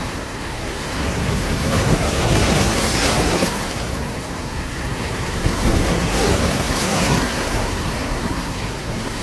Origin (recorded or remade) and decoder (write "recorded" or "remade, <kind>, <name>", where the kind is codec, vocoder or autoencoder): remade, codec, SNAC